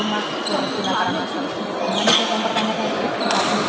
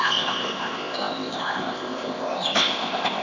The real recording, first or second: first